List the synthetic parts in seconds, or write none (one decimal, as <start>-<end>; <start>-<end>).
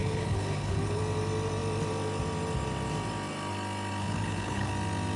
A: 0.0-1.0; 4.0-4.7